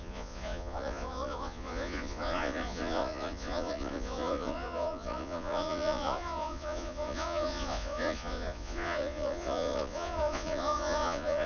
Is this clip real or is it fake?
fake